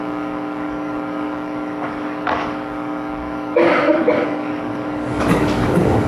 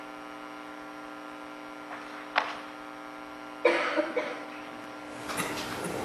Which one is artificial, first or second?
first